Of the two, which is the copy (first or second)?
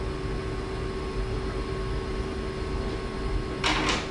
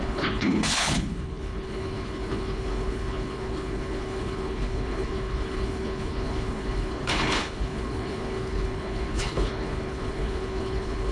second